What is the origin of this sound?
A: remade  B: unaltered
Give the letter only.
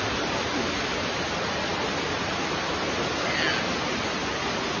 B